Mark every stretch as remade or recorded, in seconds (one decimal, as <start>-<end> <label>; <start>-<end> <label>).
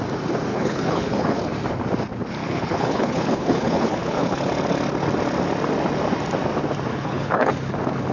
0.0-0.5 recorded; 0.5-1.4 remade; 1.4-2.4 recorded; 2.4-4.5 remade; 4.5-6.9 recorded; 6.9-7.5 remade; 7.5-8.1 recorded